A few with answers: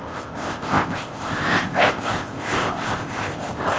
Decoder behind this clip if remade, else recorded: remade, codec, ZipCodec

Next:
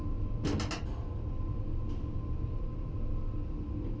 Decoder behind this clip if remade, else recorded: recorded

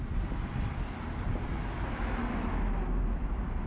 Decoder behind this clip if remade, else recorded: recorded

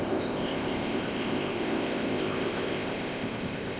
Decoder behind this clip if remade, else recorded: remade, codec, ZipCodec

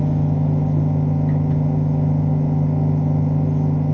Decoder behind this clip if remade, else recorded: recorded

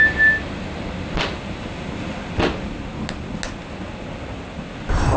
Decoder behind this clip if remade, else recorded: recorded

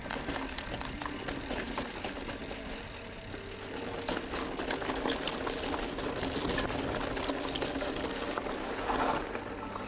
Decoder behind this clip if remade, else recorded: recorded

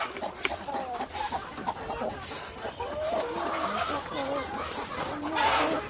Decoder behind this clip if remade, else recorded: recorded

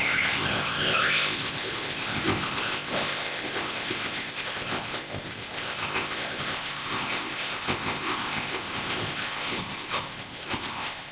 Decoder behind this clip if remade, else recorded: remade, codec, ZipCodec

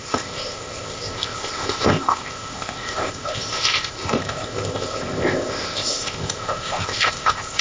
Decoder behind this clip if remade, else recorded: remade, codec, ZipCodec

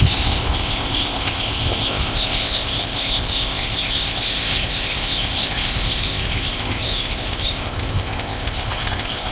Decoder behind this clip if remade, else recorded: remade, codec, ZipCodec